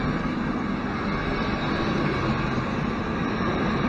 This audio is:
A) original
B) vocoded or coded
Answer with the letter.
A